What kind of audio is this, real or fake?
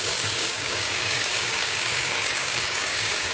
fake